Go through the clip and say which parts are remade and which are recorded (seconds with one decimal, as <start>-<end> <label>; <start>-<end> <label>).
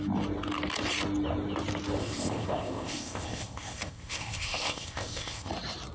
0.0-2.0 recorded; 2.0-5.5 remade; 5.5-5.9 recorded